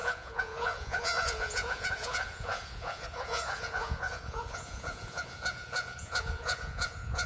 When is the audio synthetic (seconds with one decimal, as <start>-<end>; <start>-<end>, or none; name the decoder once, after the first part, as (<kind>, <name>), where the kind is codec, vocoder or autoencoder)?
0.0-7.3 (vocoder, Vocos)